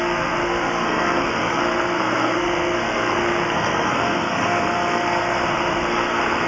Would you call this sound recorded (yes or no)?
no